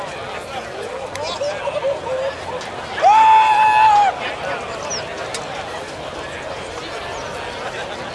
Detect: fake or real real